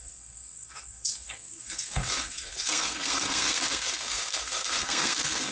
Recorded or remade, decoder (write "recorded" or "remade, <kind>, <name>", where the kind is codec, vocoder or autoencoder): remade, codec, SNAC